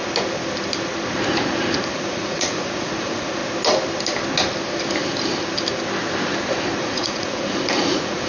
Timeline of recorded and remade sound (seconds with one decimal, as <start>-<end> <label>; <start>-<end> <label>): 0.0-1.9 recorded; 1.9-3.4 remade; 3.4-6.8 recorded; 6.8-8.3 remade